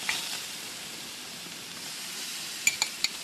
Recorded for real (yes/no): yes